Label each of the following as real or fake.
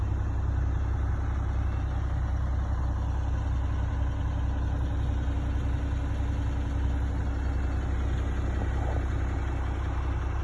real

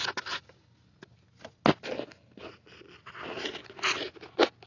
real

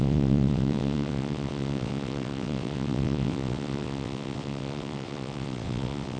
fake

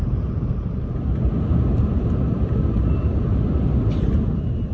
fake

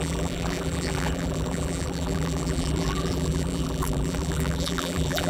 fake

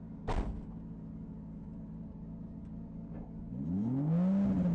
real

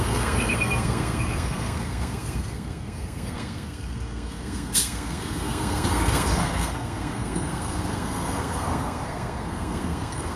fake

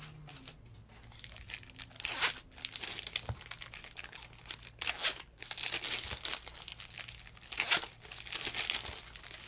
real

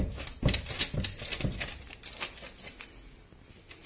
real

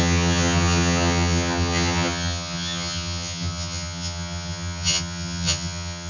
fake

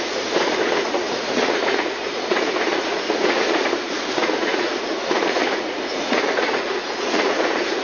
fake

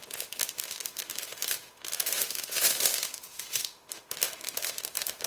fake